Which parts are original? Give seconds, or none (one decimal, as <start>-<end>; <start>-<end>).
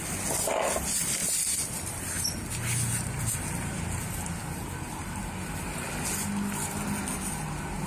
0.0-1.2; 2.3-4.4; 5.2-7.9